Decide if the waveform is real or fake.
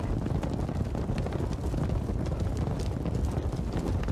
real